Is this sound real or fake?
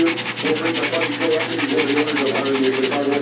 real